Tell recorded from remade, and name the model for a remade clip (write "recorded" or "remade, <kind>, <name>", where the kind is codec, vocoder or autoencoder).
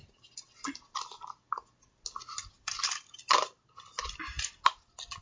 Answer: recorded